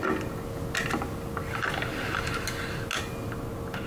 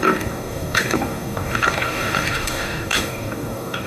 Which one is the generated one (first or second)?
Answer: second